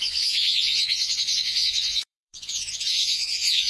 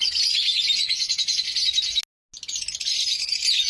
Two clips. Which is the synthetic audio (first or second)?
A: first